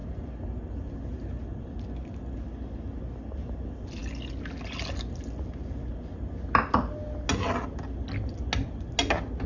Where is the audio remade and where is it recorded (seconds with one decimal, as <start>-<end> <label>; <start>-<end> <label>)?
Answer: 0.0-9.5 recorded